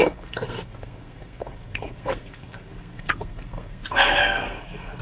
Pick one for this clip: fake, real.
fake